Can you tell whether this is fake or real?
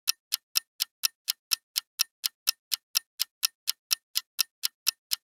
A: real